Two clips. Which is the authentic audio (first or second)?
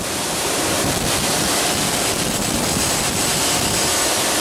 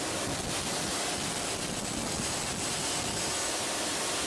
second